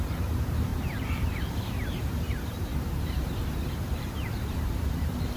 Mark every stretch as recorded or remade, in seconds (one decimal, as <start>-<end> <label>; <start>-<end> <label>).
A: 0.0-0.7 remade; 0.7-1.5 recorded; 1.5-2.7 remade; 2.7-3.7 recorded; 3.7-5.4 remade